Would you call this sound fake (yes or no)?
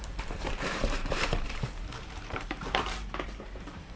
yes